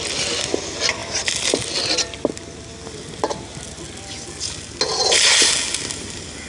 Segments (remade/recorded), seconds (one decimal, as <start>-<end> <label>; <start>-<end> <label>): 0.0-6.5 recorded